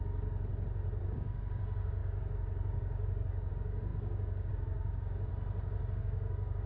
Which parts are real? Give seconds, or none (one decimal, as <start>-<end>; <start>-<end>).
0.5-1.0; 5.3-6.0